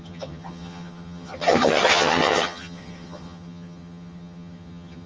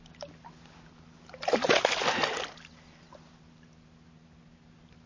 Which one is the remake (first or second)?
first